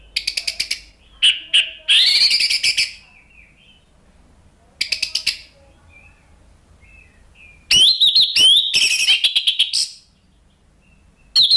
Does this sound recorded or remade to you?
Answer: recorded